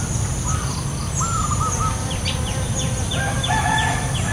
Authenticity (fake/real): real